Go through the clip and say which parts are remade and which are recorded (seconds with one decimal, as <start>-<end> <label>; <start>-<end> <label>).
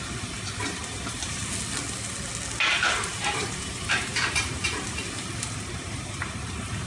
0.0-1.4 remade; 1.4-2.7 recorded; 2.7-6.9 remade